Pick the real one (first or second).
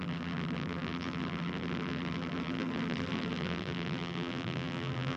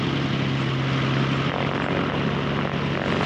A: second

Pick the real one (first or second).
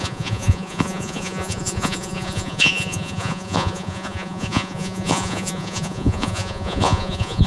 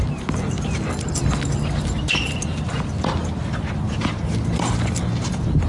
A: second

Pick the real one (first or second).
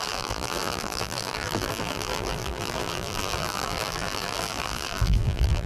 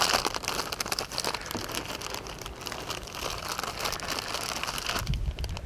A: second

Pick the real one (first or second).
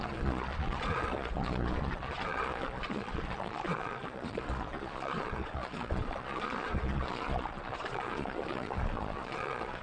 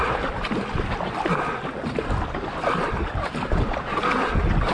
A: second